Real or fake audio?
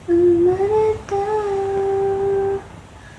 real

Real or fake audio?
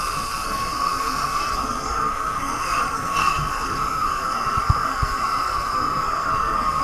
fake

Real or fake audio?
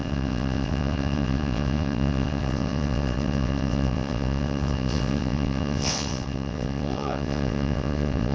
fake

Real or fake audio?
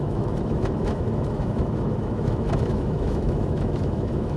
fake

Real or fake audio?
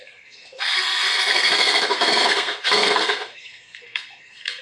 fake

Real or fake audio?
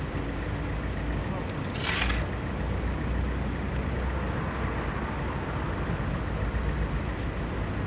real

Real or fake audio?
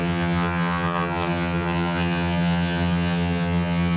fake